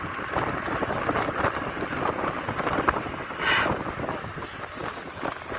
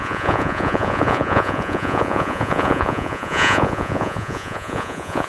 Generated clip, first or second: second